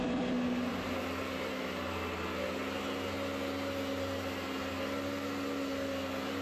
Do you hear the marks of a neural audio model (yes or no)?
no